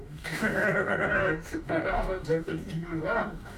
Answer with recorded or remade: remade